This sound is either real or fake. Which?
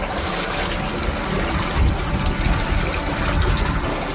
real